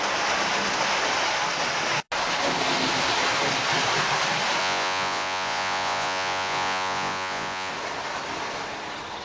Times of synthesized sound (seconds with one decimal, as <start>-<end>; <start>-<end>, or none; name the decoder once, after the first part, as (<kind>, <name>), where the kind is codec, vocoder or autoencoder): 4.6-7.7 (vocoder, Vocos)